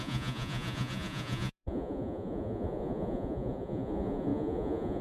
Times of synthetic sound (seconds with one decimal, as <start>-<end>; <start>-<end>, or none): 0.0-5.0